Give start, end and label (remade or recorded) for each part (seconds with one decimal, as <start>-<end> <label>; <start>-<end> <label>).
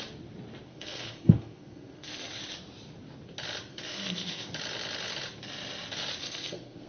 0.0-0.7 recorded; 0.7-2.4 remade; 2.4-3.7 recorded; 3.7-4.5 remade; 4.5-6.2 recorded; 6.2-6.9 remade